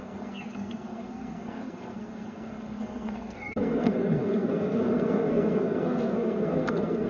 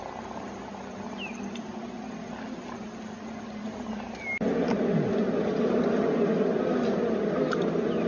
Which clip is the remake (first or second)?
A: first